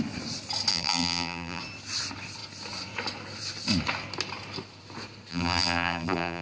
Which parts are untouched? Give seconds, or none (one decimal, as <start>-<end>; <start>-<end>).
0.0-0.7; 1.6-5.3

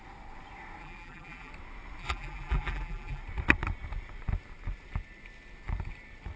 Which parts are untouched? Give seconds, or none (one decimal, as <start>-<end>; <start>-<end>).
0.0-0.8; 1.5-2.0; 3.2-6.4

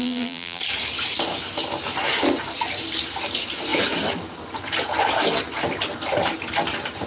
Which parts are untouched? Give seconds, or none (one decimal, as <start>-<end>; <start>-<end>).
0.6-7.1

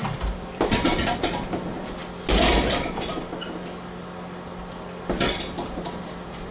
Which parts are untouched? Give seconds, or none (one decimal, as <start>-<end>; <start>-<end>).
2.0-5.9

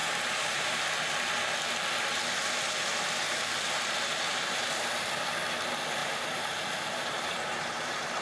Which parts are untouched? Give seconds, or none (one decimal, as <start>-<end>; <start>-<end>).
0.8-6.0